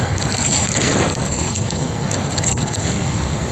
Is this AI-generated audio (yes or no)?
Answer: yes